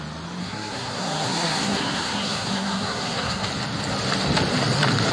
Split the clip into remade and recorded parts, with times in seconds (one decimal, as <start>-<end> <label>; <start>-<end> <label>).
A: 0.0-0.4 recorded; 0.4-3.5 remade; 3.5-5.1 recorded